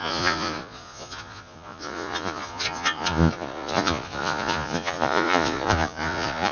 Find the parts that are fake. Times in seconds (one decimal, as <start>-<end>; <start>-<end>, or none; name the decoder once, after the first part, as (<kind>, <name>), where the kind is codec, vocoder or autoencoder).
0.0-6.5 (vocoder, Vocos)